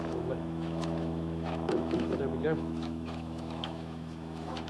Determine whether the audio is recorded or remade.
remade